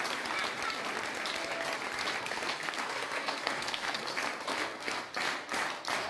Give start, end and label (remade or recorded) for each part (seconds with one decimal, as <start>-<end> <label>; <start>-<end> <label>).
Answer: 0.0-2.2 recorded; 2.2-4.1 remade; 4.1-4.5 recorded; 4.5-5.0 remade; 5.0-6.1 recorded